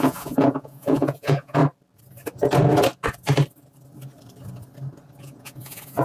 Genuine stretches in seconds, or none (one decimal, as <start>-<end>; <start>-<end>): 1.6-5.2